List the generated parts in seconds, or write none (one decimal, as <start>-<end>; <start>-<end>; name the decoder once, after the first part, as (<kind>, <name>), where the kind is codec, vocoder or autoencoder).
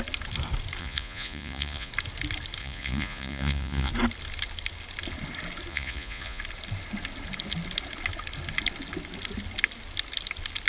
0.8-1.9 (vocoder, Vocos); 2.6-3.9; 5.7-6.4